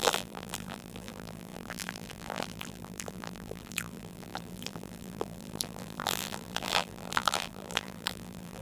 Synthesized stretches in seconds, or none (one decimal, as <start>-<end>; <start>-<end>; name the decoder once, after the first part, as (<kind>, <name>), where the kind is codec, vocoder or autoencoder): 0.0-8.6 (vocoder, BigVGAN v2)